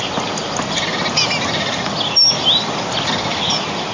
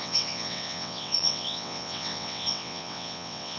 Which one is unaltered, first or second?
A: first